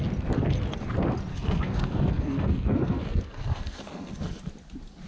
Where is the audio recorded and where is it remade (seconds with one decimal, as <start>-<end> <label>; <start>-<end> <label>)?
0.0-1.3 recorded; 1.3-4.4 remade; 4.4-5.1 recorded